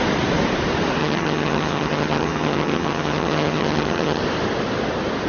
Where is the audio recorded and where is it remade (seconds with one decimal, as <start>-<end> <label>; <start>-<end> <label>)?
0.0-1.0 recorded; 1.0-4.2 remade; 4.2-5.3 recorded